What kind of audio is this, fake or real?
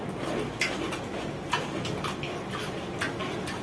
real